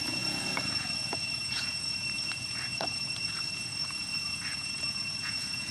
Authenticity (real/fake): fake